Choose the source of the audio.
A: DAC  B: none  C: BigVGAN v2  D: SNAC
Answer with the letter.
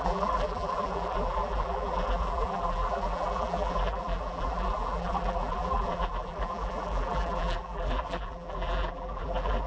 C